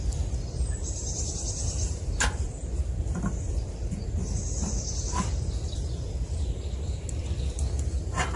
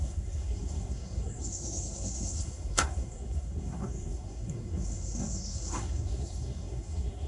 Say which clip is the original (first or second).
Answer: first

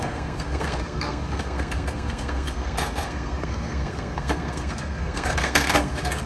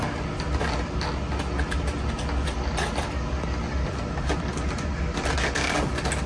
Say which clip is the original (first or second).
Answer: second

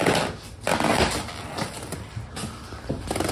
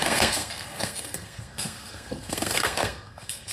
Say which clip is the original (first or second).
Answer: first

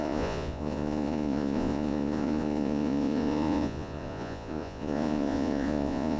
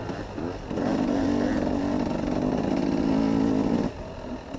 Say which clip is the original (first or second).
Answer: second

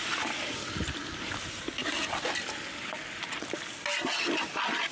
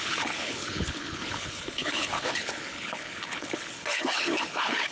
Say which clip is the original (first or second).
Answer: first